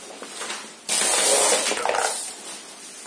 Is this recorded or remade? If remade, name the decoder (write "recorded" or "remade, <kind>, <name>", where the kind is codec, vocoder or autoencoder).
recorded